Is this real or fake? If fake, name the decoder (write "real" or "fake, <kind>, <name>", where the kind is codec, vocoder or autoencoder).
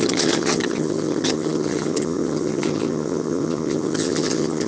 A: fake, vocoder, HiFi-GAN